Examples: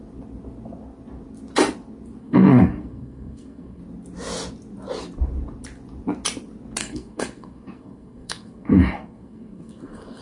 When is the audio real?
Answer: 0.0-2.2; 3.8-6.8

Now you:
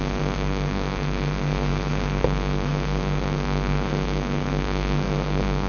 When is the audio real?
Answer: none